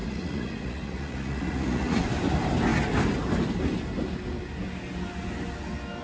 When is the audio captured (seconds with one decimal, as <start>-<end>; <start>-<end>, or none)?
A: 2.0-6.0